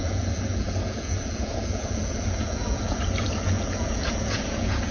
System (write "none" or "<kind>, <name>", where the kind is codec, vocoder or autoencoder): vocoder, Vocos